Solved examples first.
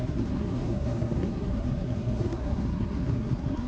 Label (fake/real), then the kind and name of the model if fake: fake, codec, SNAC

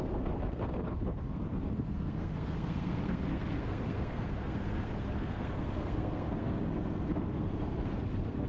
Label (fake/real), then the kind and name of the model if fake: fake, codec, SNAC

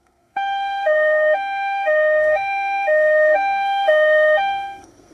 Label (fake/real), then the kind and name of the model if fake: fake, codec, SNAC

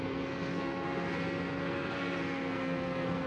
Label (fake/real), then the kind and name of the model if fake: fake, codec, SNAC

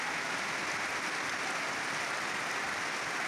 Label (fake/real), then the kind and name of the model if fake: real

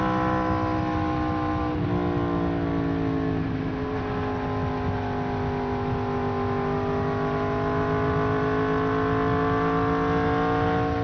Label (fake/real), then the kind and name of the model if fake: real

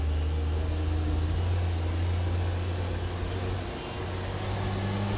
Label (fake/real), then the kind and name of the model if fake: real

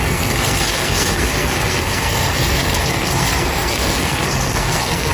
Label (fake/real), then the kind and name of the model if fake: fake, codec, SNAC